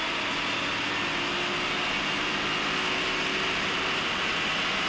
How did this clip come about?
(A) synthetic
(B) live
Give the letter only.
B